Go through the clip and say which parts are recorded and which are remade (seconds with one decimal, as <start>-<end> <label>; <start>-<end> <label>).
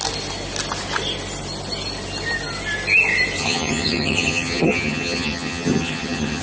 0.0-3.4 recorded; 3.4-6.4 remade